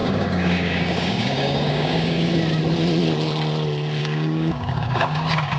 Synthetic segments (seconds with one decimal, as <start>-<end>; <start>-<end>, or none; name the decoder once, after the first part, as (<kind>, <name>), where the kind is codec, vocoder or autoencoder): 0.0-2.3 (codec, DAC); 4.0-5.6